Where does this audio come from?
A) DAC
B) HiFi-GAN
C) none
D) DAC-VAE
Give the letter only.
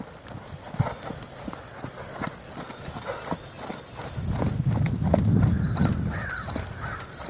C